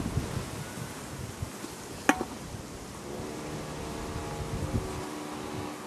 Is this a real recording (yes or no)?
yes